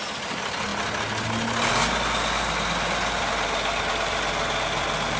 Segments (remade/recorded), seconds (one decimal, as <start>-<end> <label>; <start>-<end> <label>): 0.0-5.2 recorded

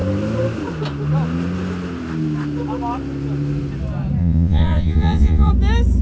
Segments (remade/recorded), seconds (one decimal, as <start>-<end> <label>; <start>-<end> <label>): 0.0-4.2 recorded; 4.2-5.5 remade; 5.5-6.0 recorded

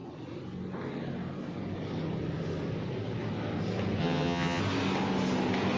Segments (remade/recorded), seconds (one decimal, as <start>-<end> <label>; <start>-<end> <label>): 0.0-4.0 recorded; 4.0-4.6 remade; 4.6-5.8 recorded

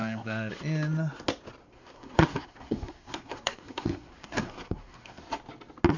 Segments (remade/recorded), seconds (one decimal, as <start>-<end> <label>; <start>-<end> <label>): 0.0-0.5 remade; 0.5-1.6 recorded; 1.6-5.2 remade; 5.2-6.0 recorded

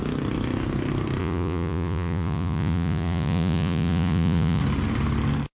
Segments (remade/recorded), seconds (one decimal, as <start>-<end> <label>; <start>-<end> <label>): 0.0-1.2 recorded; 1.2-4.6 remade; 4.6-5.6 recorded

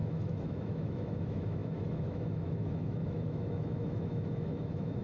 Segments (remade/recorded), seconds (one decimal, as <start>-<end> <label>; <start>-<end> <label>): 0.0-5.0 remade

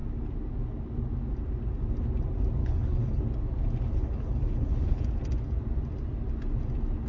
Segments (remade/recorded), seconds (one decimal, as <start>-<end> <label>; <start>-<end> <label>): 0.0-2.6 recorded; 2.6-3.2 remade; 3.2-3.9 recorded; 3.9-5.0 remade; 5.0-7.1 recorded

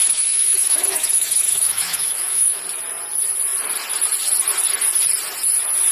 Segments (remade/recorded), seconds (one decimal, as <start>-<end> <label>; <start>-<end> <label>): 0.0-2.6 remade; 2.6-5.9 recorded